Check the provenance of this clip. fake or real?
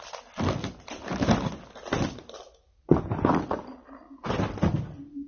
real